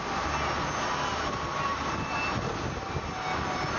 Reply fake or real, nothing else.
real